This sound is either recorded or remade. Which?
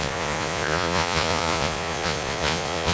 remade